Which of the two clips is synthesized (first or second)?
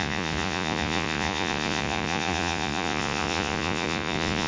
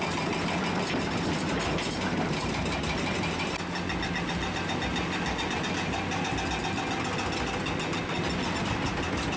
first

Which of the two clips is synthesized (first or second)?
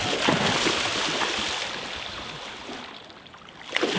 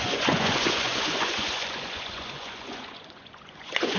second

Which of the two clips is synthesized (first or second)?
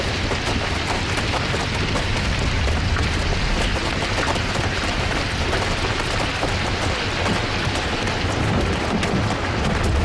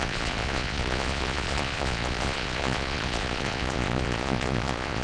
second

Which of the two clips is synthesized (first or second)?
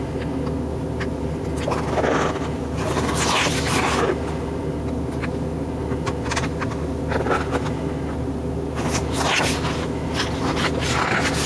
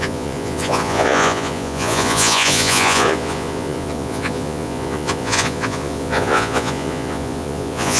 second